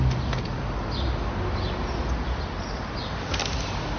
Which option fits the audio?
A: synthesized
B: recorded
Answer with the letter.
B